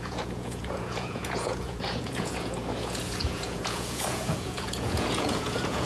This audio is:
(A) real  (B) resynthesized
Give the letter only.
B